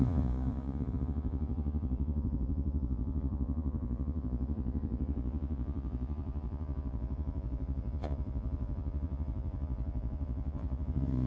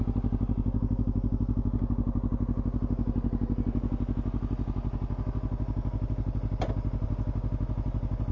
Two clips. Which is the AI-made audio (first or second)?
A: first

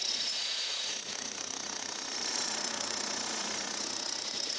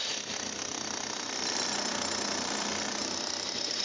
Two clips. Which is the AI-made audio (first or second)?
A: first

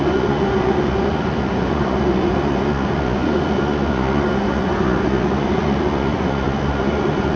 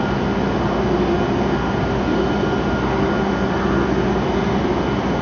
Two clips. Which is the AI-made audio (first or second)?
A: first